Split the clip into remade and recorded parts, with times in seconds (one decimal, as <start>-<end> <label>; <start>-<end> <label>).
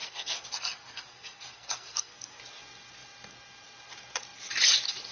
0.0-2.4 remade; 2.4-5.1 recorded